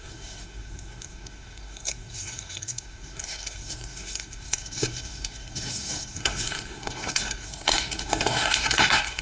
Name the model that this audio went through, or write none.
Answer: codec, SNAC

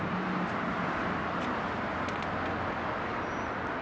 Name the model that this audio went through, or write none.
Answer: none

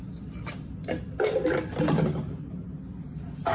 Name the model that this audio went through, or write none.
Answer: none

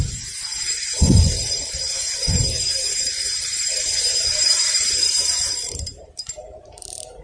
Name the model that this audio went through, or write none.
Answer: vocoder, BigVGAN v2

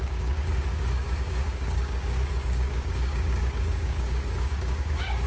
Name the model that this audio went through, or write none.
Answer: codec, DAC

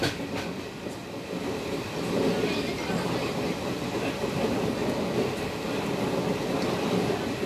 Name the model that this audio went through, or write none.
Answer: none